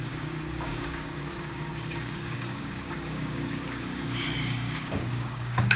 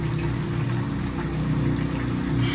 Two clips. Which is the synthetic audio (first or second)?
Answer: first